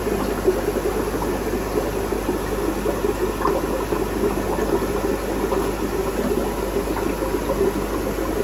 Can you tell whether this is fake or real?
real